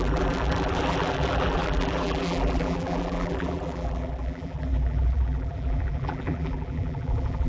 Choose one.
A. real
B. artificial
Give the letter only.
B